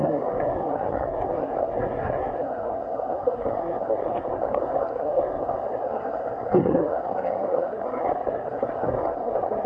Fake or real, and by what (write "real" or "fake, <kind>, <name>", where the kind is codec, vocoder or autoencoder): fake, codec, SNAC